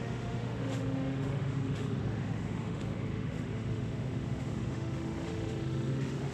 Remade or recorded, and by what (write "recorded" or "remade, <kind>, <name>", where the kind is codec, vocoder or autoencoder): remade, autoencoder, DAC-VAE